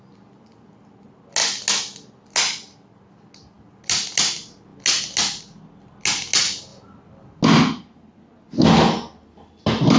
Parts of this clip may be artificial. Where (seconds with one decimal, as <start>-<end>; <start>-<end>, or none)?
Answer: none